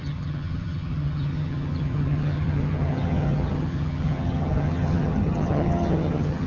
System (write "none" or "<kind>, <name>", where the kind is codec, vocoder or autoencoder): vocoder, HiFi-GAN